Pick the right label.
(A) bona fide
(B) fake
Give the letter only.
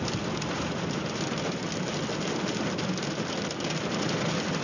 A